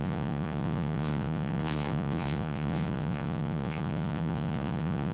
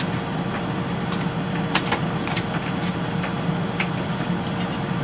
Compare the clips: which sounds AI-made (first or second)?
first